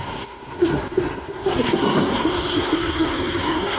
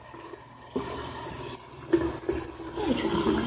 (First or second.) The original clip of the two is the second